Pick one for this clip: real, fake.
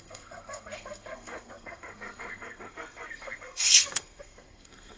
fake